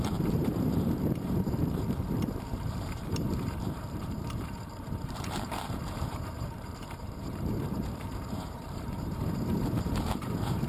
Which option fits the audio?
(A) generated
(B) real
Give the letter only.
A